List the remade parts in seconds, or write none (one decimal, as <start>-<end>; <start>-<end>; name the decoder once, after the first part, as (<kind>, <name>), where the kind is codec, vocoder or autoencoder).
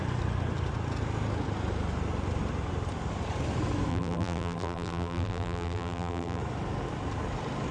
3.9-6.4 (vocoder, BigVGAN v2)